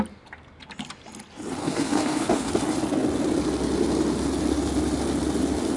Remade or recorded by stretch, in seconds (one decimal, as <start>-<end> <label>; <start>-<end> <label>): 0.0-1.6 recorded; 1.6-2.5 remade; 2.5-5.8 recorded